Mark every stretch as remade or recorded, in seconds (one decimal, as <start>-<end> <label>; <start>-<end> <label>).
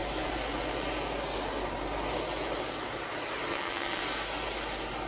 0.0-3.5 recorded; 3.5-4.0 remade; 4.0-5.1 recorded